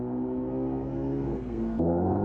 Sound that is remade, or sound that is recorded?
remade